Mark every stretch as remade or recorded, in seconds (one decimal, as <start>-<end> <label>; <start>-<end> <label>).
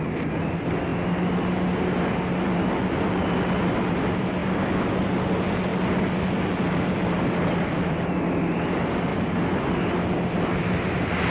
0.0-11.3 recorded